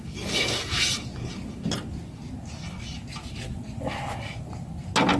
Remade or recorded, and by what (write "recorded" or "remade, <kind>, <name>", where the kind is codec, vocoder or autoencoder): recorded